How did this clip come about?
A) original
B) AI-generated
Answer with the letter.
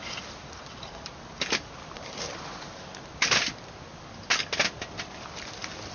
A